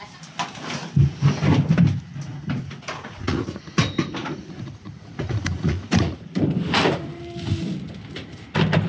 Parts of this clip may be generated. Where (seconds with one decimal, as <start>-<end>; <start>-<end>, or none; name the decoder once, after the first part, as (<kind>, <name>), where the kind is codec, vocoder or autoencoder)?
2.3-3.6 (vocoder, Vocos); 4.2-6.4